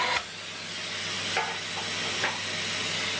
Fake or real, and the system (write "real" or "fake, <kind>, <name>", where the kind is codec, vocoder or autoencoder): real